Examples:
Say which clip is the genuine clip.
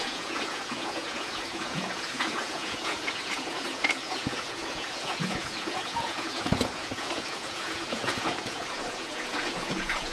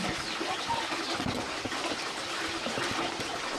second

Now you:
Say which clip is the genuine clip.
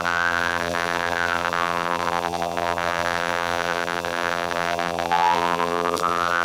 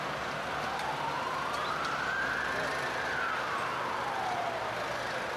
second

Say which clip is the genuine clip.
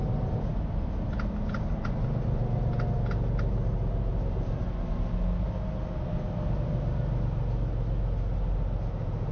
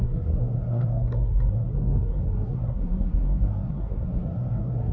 first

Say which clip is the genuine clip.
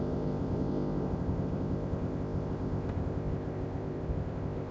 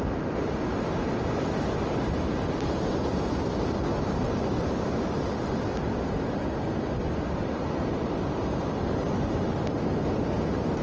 second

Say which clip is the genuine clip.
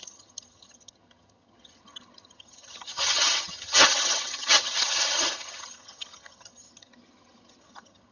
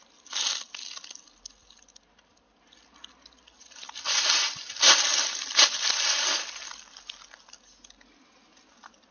second